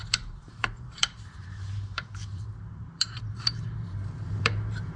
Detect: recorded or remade remade